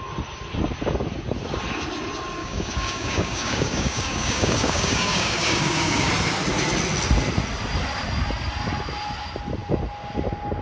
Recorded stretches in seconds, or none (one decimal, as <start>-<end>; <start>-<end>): 0.0-2.4; 6.1-10.6